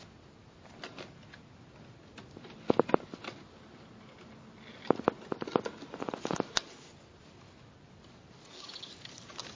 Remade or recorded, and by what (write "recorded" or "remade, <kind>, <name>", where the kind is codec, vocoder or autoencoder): recorded